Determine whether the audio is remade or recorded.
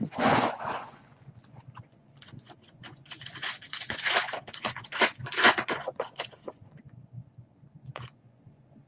remade